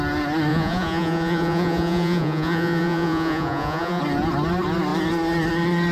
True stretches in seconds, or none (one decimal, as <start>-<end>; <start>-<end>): 0.0-0.5; 4.0-5.9